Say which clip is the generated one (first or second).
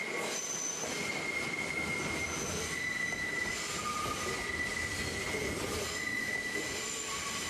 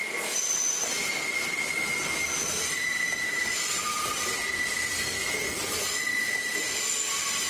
first